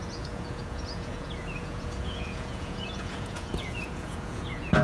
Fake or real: fake